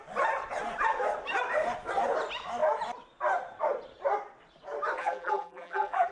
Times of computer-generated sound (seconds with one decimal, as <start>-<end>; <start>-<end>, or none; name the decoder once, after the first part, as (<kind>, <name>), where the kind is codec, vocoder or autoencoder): 5.0-6.1 (vocoder, BigVGAN v2)